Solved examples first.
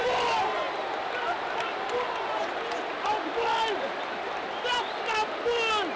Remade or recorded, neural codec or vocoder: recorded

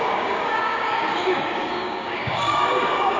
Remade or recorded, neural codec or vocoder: remade, codec, DAC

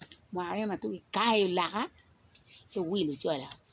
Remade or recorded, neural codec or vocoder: recorded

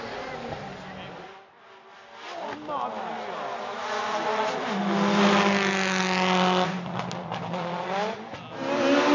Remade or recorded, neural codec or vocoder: recorded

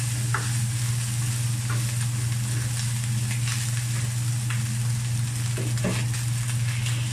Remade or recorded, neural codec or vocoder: recorded